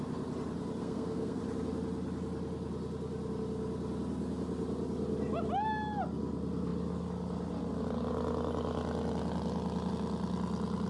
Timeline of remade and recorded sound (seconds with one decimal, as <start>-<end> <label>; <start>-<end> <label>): 0.0-0.8 recorded; 0.8-1.4 remade; 1.4-10.9 recorded